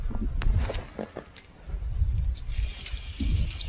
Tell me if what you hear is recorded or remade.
recorded